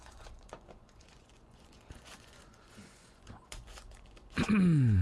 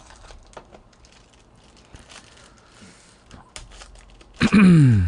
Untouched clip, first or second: second